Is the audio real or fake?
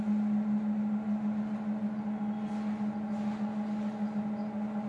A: real